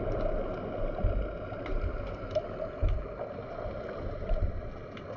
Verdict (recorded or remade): recorded